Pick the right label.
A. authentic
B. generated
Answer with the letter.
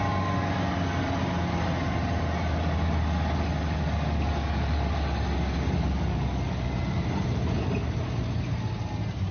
A